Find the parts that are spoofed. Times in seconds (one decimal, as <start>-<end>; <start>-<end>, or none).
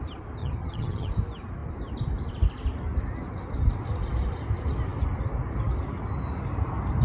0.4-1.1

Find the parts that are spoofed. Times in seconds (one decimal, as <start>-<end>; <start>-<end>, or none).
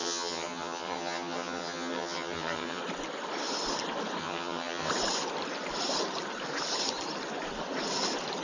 0.0-2.8; 4.2-4.9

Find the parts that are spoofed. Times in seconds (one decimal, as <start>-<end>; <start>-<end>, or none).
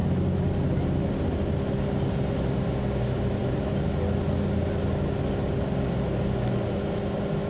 none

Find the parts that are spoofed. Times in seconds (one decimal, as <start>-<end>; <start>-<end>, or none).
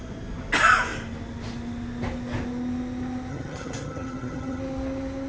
3.3-4.6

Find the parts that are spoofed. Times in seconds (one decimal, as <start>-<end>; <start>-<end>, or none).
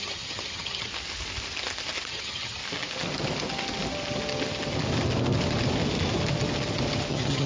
0.0-0.9; 2.1-2.6; 7.1-7.5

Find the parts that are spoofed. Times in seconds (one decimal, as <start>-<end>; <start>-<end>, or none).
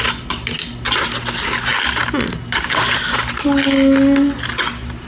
none